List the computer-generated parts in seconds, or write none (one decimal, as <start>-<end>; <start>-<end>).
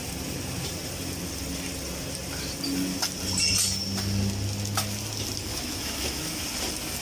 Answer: 5.5-6.4